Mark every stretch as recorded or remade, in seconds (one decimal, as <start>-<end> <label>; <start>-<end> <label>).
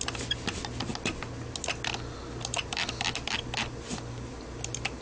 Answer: 0.0-5.0 recorded